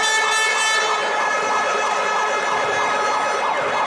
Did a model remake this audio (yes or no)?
no